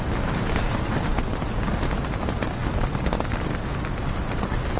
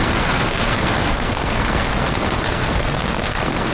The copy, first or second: second